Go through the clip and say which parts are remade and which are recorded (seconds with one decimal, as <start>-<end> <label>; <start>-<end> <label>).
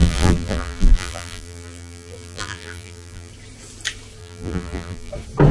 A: 0.0-3.3 remade; 3.3-4.2 recorded; 4.2-5.1 remade; 5.1-5.5 recorded